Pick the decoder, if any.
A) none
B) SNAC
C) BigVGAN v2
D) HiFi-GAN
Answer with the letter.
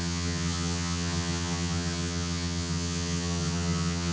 D